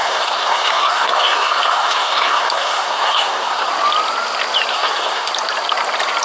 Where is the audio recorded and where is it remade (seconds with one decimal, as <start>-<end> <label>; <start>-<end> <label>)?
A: 0.0-3.7 remade; 3.7-4.7 recorded; 4.7-5.3 remade; 5.3-6.2 recorded